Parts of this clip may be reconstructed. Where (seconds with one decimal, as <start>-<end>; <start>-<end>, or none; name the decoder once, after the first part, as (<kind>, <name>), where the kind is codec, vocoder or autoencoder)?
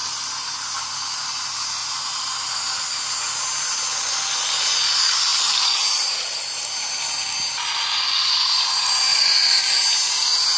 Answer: 1.8-2.6 (vocoder, BigVGAN v2); 9.1-9.8